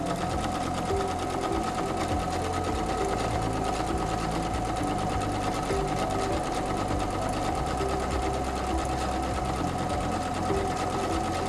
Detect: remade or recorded recorded